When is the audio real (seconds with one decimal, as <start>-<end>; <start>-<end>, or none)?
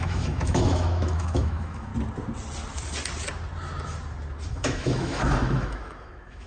1.9-4.5